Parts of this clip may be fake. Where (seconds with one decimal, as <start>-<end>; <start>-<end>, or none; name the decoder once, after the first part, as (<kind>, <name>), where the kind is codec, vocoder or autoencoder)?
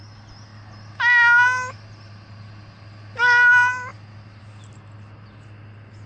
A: none